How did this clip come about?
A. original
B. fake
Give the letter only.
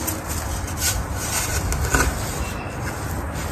A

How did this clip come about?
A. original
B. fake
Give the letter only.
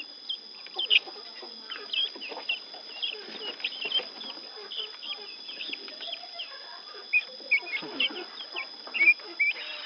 A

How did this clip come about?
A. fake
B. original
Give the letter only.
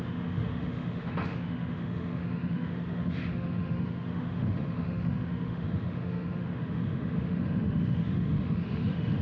A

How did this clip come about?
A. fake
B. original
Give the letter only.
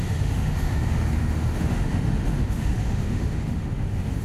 A